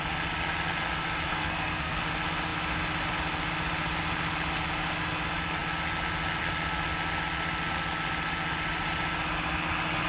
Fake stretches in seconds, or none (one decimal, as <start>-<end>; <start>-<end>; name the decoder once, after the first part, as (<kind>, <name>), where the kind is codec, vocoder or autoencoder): 1.3-2.0 (codec, SNAC)